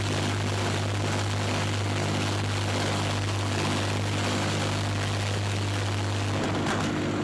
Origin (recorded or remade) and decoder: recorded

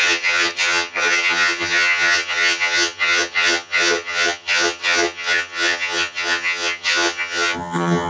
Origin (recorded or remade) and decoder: remade, vocoder, HiFi-GAN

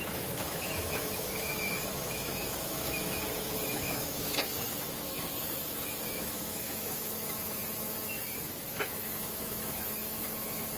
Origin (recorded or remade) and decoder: remade, autoencoder, DAC-VAE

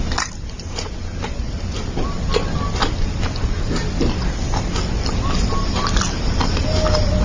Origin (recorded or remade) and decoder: recorded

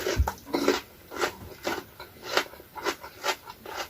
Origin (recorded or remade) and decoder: recorded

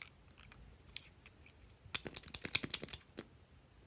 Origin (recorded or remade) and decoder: recorded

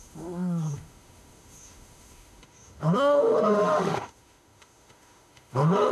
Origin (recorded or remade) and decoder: remade, autoencoder, DAC-VAE